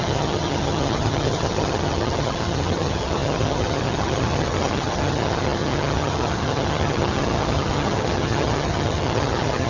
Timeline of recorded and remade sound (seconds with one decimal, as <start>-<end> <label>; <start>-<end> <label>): 0.0-9.7 remade